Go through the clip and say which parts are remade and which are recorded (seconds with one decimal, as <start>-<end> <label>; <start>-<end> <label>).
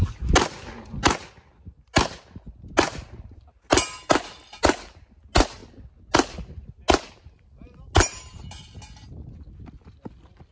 0.0-10.5 recorded